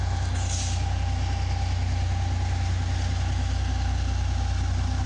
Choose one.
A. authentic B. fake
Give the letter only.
A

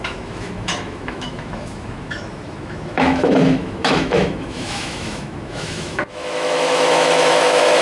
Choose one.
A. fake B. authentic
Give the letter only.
A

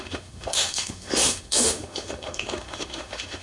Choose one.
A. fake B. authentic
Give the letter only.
A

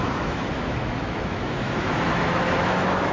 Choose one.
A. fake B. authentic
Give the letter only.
A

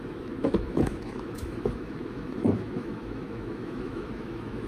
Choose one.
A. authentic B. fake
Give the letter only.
B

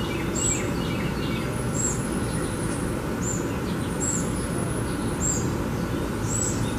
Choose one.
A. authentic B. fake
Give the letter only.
A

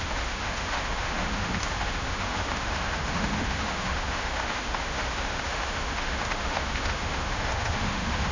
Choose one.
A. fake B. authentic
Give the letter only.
A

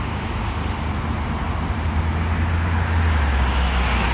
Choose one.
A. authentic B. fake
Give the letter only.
A